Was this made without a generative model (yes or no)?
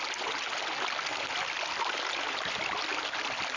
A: yes